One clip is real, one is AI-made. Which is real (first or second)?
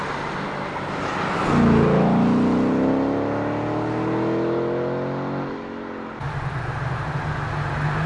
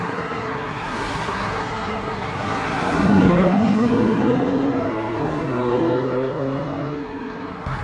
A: first